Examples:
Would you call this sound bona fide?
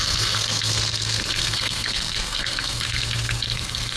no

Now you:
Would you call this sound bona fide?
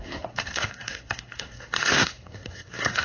no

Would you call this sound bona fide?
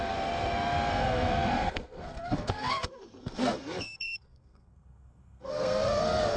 no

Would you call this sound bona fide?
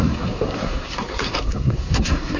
no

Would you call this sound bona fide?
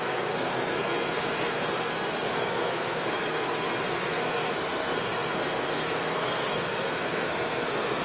no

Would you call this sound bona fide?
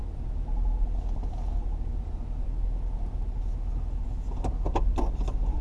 yes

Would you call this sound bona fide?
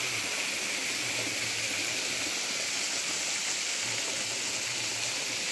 yes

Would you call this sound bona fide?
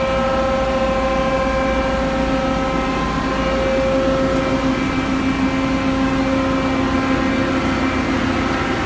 yes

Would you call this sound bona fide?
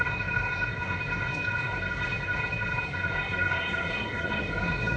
no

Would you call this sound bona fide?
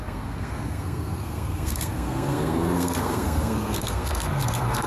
no